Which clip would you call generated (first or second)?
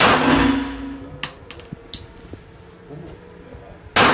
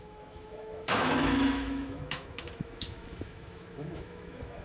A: second